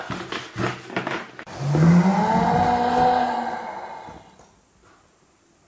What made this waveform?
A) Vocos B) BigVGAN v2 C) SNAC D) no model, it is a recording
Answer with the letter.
D